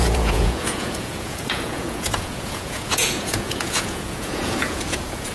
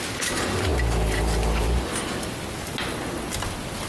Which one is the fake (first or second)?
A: first